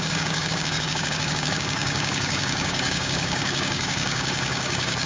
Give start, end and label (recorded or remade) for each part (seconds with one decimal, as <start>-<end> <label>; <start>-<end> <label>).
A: 0.0-5.1 remade